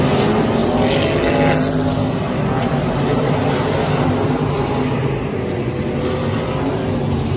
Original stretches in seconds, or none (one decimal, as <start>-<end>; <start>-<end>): 0.0-7.4